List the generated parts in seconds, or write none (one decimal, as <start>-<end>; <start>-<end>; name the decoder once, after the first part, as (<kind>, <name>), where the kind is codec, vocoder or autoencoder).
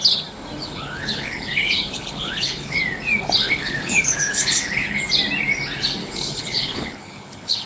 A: 0.6-2.8 (codec, HILCodec); 3.4-5.0; 6.0-7.7